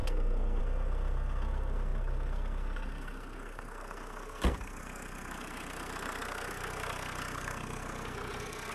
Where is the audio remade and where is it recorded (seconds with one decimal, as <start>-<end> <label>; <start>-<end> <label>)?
0.0-8.7 remade